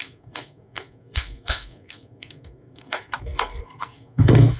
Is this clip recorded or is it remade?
remade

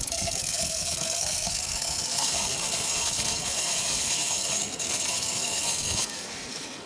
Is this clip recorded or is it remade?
remade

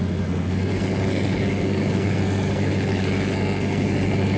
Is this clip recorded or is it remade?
remade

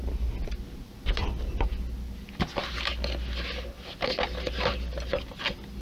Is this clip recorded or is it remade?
recorded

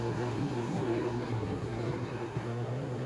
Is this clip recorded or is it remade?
remade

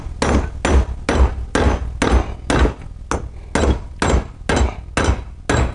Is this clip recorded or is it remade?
recorded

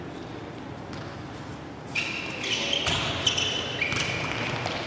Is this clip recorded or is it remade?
recorded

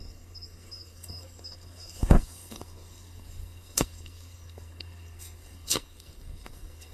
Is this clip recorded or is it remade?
remade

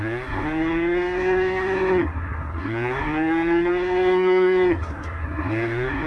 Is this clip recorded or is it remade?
remade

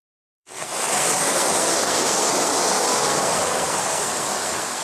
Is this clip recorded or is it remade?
remade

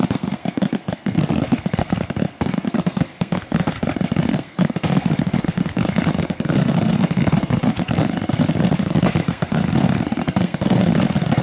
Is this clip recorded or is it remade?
remade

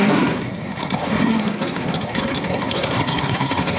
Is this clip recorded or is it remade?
remade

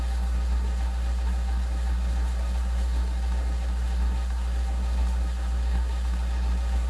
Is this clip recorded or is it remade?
remade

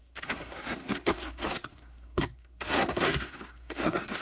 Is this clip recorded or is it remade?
remade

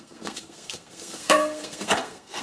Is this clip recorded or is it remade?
remade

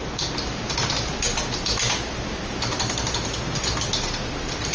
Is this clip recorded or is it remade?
recorded